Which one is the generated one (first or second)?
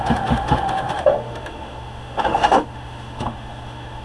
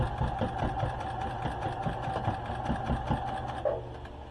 first